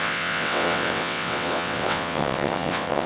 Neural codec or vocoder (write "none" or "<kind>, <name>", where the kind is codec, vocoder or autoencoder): vocoder, WaveNeXt